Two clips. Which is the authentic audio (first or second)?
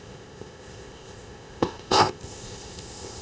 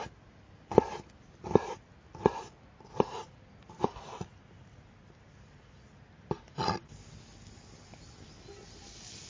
second